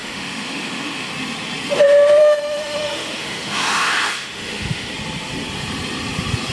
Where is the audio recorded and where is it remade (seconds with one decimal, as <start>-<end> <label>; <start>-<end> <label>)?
0.0-1.1 remade; 1.1-2.2 recorded; 2.2-4.9 remade; 4.9-6.5 recorded

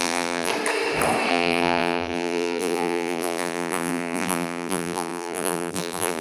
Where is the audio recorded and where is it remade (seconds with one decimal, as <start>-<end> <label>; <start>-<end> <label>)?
0.0-0.5 remade; 0.5-1.3 recorded; 1.3-6.2 remade

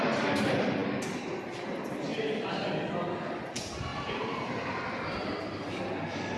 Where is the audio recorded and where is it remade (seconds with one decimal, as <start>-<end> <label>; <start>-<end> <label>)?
0.0-3.9 recorded; 3.9-5.8 remade; 5.8-6.4 recorded

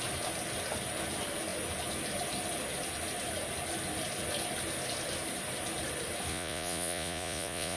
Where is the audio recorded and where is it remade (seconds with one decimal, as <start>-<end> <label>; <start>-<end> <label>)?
0.0-6.3 recorded; 6.3-7.8 remade